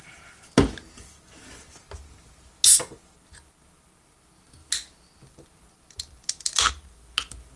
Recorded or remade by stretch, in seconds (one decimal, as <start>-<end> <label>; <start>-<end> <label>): 0.0-7.6 recorded